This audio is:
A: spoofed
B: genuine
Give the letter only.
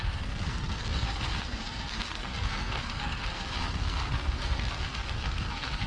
A